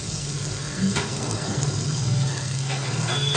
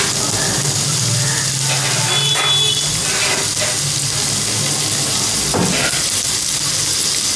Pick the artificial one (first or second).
first